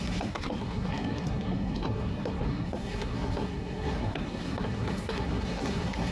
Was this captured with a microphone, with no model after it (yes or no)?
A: no